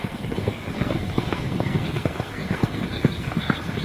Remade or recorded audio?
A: remade